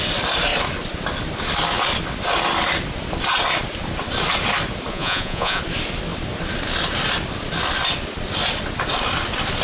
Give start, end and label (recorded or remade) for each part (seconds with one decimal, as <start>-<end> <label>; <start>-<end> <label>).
0.0-4.9 recorded; 4.9-5.6 remade; 5.6-9.6 recorded